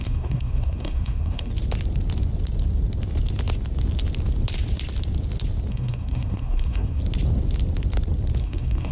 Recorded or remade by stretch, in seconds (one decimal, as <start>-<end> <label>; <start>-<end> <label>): 0.0-1.5 remade; 1.5-5.7 recorded; 5.7-7.0 remade; 7.0-8.4 recorded; 8.4-8.9 remade

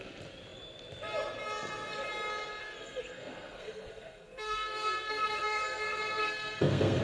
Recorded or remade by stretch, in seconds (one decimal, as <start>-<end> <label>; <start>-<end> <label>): 0.0-2.6 recorded; 2.6-7.0 remade

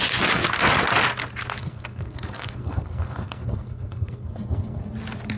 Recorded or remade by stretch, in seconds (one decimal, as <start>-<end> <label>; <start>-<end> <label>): 0.0-1.6 recorded; 1.6-4.8 remade; 4.8-5.4 recorded